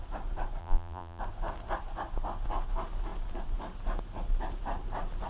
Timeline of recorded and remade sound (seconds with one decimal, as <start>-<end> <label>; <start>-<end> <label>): 0.0-0.6 recorded; 0.6-1.2 remade; 1.2-5.3 recorded

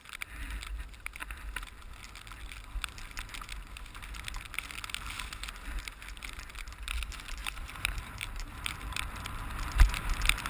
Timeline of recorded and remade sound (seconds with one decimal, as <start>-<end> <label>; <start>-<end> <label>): 0.0-7.4 recorded; 7.4-9.0 remade; 9.0-10.5 recorded

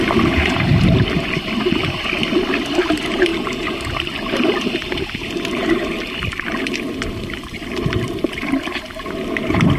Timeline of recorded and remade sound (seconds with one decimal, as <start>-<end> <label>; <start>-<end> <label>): 0.0-2.2 recorded; 2.2-2.8 remade; 2.8-9.8 recorded